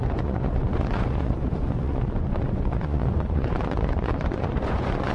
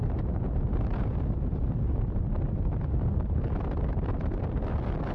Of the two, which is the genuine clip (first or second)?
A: second